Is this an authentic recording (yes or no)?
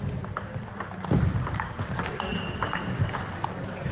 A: yes